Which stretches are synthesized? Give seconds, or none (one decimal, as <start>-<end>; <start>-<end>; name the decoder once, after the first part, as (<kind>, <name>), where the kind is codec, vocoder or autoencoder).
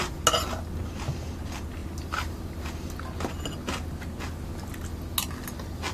none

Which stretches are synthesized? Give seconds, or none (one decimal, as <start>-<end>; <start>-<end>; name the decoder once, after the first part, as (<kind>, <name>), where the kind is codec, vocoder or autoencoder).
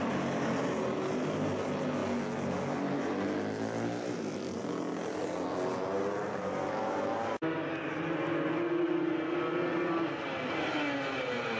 none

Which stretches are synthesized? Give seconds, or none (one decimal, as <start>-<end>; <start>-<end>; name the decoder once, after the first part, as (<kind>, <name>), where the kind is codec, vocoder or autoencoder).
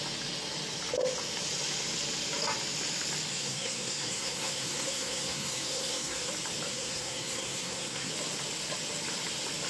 3.3-6.3 (codec, SNAC); 6.7-8.1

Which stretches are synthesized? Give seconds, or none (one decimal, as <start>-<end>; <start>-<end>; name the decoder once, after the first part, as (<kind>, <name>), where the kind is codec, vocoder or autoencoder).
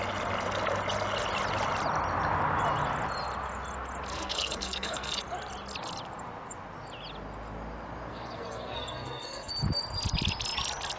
4.1-5.2 (codec, SNAC); 8.1-9.5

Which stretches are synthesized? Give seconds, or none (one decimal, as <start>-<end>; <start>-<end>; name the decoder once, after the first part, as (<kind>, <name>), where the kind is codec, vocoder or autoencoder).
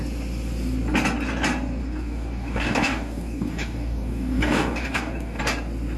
1.8-5.4 (codec, DAC)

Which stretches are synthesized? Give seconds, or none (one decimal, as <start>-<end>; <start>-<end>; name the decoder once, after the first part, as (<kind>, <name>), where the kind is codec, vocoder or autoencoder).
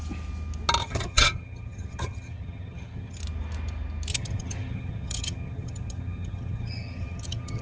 0.8-3.2 (vocoder, HiFi-GAN); 4.1-7.6